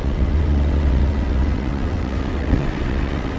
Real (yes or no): no